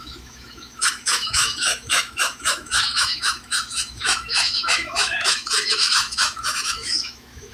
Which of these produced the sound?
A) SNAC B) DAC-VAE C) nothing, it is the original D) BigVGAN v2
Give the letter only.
B